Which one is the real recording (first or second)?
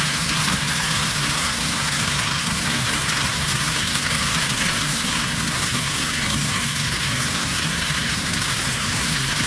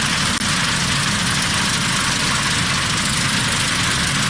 second